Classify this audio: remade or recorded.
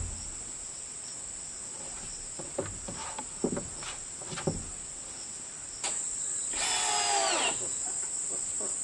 recorded